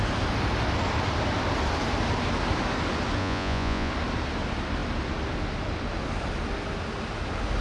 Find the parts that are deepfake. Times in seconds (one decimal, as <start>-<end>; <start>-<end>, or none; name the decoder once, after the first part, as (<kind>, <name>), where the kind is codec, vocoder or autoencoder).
3.2-3.9 (vocoder, Vocos)